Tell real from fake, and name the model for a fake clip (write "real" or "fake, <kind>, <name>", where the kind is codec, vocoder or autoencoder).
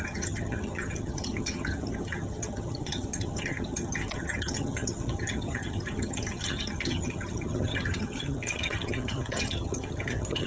fake, vocoder, HiFi-GAN